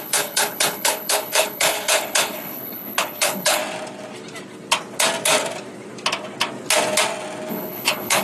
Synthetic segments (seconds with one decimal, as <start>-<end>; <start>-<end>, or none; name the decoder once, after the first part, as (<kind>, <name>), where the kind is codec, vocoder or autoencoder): 0.0-3.6 (codec, HILCodec); 7.5-8.2